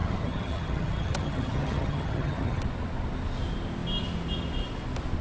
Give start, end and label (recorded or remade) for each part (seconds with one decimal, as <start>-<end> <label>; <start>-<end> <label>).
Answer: 0.0-2.6 remade; 2.6-5.2 recorded